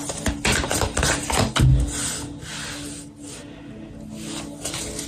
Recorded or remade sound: recorded